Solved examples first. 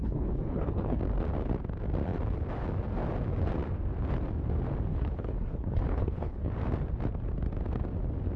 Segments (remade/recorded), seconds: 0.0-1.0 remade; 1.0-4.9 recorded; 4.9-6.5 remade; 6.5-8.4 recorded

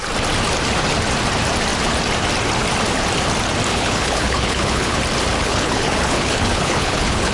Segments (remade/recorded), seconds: 0.0-3.7 recorded; 3.7-5.0 remade; 5.0-5.4 recorded; 5.4-7.3 remade

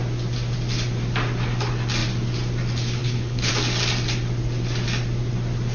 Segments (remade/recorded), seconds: 0.0-3.0 recorded; 3.0-3.5 remade; 3.5-5.7 recorded

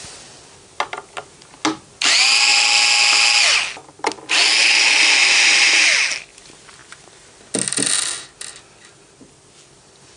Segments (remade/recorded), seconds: 0.0-10.2 recorded

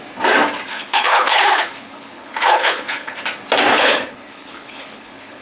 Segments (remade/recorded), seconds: 0.0-0.7 recorded; 0.7-3.2 remade; 3.2-3.7 recorded; 3.7-5.4 remade

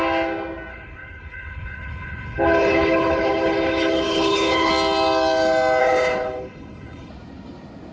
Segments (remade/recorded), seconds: 0.0-0.7 recorded; 0.7-4.7 remade; 4.7-5.8 recorded; 5.8-7.1 remade; 7.1-7.9 recorded

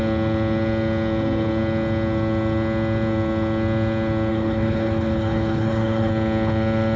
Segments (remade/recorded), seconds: 0.0-4.3 recorded; 4.3-6.1 remade; 6.1-7.0 recorded

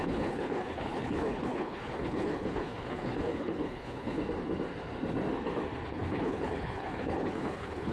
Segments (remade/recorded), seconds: 0.0-4.2 remade; 4.2-5.9 recorded; 5.9-7.9 remade